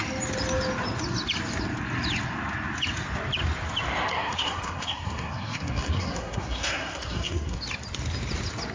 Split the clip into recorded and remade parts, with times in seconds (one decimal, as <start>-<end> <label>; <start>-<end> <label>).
0.0-4.1 recorded; 4.1-7.6 remade; 7.6-8.7 recorded

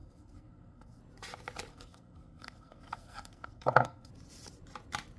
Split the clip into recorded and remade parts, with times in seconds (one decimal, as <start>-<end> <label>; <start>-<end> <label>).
0.0-1.0 remade; 1.0-1.7 recorded; 1.7-4.1 remade; 4.1-5.2 recorded

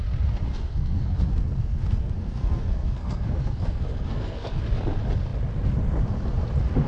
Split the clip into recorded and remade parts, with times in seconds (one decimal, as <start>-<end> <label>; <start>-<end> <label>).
0.0-0.5 recorded; 0.5-4.6 remade; 4.6-6.9 recorded

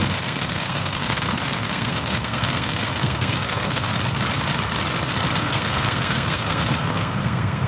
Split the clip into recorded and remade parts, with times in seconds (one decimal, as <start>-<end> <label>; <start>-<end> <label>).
0.0-3.9 remade; 3.9-5.4 recorded; 5.4-7.7 remade

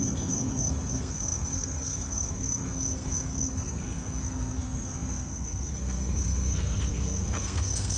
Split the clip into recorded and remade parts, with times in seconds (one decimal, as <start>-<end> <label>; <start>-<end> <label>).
0.0-8.0 remade

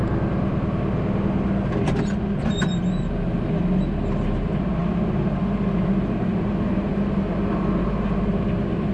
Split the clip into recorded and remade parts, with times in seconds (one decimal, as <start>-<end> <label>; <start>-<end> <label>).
0.0-8.9 recorded

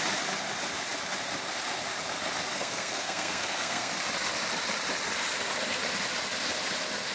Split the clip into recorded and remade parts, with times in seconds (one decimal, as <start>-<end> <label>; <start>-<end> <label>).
0.0-2.5 recorded; 2.5-3.9 remade; 3.9-7.1 recorded

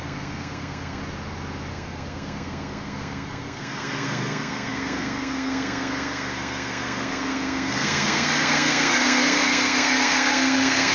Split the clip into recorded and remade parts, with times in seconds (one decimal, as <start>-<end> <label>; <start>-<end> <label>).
0.0-1.0 remade; 1.0-1.7 recorded; 1.7-10.9 remade